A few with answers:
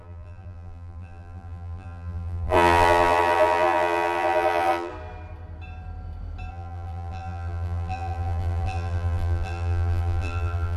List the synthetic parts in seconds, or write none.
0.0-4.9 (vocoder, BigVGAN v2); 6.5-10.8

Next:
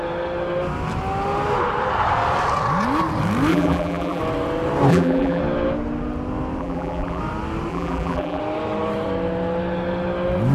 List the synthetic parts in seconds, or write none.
3.5-4.2 (vocoder, BigVGAN v2); 4.9-5.4; 6.6-7.2; 7.7-8.4

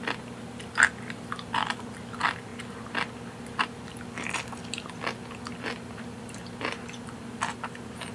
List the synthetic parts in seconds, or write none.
none

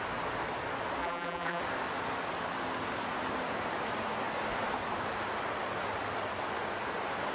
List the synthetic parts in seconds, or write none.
1.0-1.6 (vocoder, BigVGAN v2)